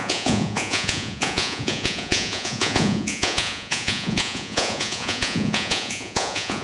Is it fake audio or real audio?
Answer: fake